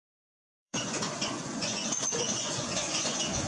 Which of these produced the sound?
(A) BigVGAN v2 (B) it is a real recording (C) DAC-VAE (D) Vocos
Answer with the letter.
D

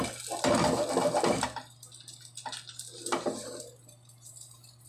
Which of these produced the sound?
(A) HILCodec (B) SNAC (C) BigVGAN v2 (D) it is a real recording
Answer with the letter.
D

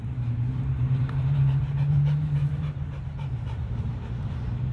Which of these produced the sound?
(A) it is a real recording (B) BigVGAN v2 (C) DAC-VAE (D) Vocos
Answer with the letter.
B